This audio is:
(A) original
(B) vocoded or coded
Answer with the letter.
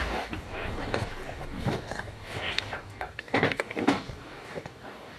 B